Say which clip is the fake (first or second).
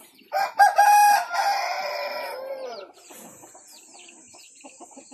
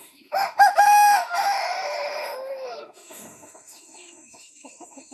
second